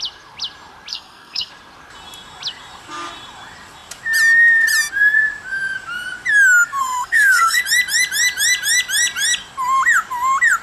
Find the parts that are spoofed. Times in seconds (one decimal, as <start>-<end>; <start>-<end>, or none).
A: 0.9-1.5; 6.8-7.6